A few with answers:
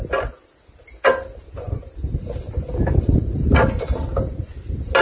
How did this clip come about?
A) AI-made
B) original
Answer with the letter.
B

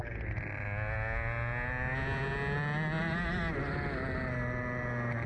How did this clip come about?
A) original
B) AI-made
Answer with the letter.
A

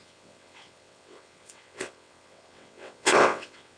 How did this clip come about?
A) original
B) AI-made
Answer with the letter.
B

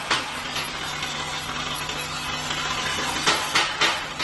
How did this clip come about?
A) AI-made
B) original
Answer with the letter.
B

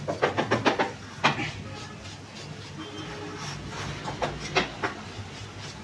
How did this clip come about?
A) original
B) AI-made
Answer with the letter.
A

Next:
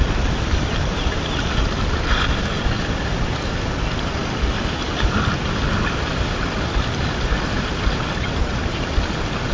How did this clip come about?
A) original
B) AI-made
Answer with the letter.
A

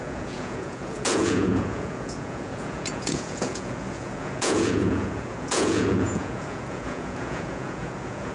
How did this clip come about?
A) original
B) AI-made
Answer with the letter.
B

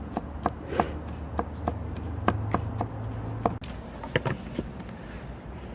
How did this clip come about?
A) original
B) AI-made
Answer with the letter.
A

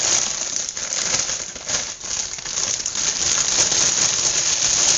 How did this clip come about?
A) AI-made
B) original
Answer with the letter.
B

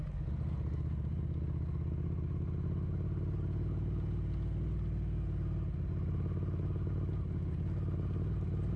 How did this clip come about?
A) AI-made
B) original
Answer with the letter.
B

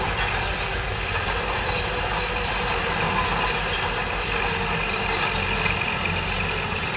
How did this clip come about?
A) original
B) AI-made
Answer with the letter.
A